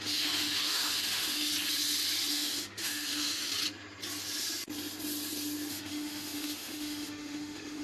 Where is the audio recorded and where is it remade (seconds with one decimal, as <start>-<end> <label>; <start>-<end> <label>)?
0.0-1.5 remade; 1.5-2.3 recorded; 2.3-3.5 remade; 3.5-5.7 recorded; 5.7-7.8 remade